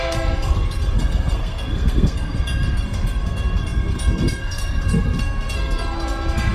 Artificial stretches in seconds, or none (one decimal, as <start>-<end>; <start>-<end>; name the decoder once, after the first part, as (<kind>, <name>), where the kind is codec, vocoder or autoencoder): 0.0-6.5 (codec, SNAC)